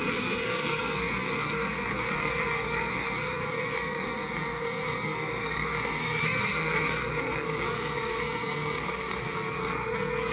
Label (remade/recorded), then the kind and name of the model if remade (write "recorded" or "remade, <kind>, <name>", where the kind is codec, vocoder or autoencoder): remade, codec, SNAC